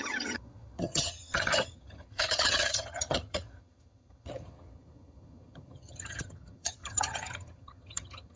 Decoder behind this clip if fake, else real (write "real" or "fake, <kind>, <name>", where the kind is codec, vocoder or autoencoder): fake, vocoder, HiFi-GAN